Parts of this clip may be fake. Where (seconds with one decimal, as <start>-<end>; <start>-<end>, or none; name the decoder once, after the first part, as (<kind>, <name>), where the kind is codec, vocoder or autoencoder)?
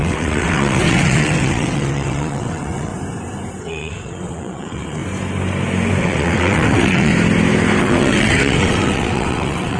0.0-2.9 (vocoder, WaveNeXt); 3.6-5.0; 6.0-7.1; 7.8-9.8